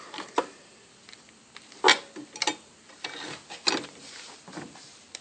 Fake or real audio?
real